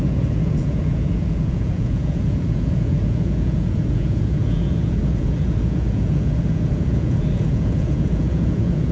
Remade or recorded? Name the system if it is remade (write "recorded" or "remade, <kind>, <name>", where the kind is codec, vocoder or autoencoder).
remade, vocoder, Vocos